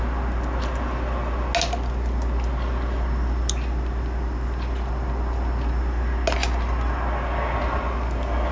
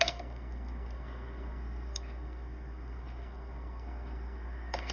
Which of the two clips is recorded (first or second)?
first